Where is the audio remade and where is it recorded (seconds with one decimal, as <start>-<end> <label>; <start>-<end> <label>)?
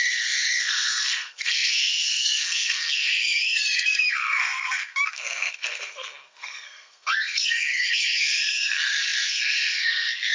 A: 0.0-10.3 remade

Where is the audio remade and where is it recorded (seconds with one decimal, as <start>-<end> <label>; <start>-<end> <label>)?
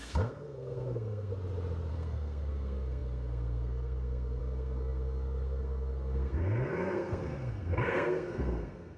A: 0.0-1.3 remade; 1.3-1.9 recorded; 1.9-9.0 remade